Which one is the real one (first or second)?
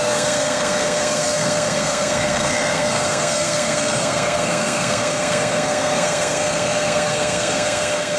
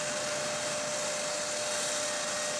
second